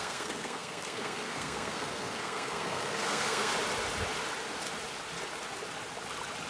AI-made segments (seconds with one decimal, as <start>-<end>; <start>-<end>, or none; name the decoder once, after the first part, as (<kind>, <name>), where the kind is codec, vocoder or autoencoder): 0.0-3.5 (codec, SNAC)